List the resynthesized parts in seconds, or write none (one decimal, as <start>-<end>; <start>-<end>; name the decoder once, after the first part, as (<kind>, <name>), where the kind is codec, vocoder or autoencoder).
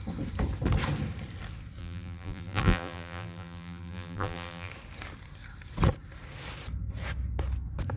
1.8-4.7 (vocoder, BigVGAN v2)